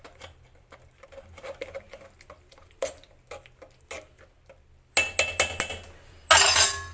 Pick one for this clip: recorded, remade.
recorded